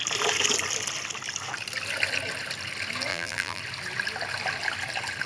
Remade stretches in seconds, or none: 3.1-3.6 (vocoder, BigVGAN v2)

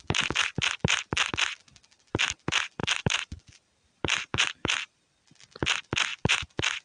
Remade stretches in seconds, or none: 2.8-5.0 (vocoder, BigVGAN v2); 6.1-6.8

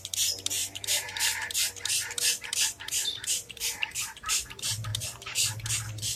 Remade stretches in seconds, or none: 0.6-4.3 (vocoder, BigVGAN v2)